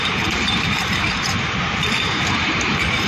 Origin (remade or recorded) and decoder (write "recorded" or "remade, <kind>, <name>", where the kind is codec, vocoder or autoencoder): remade, vocoder, BigVGAN v2